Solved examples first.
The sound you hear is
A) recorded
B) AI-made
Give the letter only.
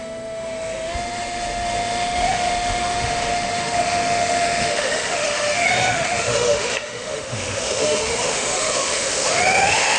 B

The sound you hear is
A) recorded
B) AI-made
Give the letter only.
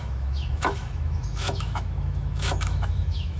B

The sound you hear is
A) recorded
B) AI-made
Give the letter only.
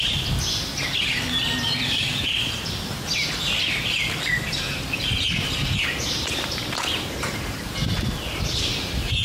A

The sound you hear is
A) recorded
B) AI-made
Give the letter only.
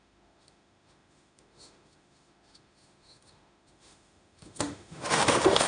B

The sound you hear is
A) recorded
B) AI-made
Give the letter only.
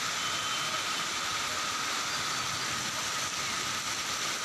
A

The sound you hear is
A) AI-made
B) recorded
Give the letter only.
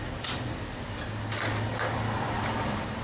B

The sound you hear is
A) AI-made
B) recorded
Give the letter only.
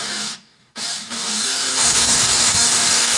A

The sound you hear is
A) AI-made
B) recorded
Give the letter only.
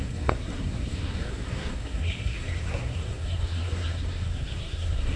A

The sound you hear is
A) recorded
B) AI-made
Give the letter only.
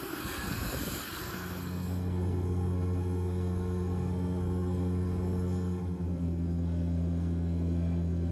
B